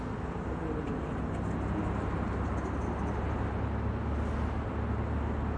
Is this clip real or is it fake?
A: real